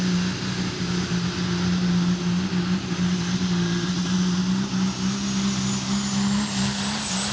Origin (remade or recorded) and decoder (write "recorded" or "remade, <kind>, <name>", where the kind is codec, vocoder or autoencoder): recorded